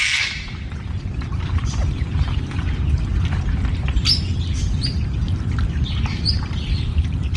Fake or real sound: fake